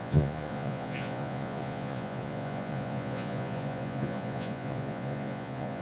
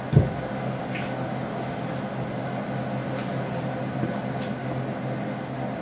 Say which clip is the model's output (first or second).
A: first